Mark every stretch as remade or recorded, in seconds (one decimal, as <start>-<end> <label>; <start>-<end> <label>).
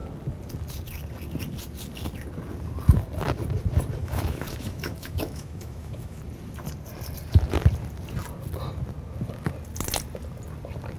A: 0.0-4.0 recorded; 4.0-6.2 remade; 6.2-11.0 recorded